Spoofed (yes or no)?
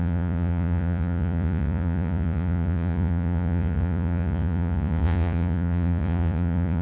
yes